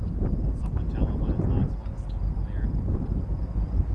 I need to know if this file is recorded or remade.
recorded